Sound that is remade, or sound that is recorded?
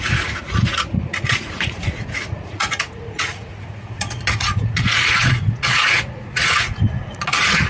remade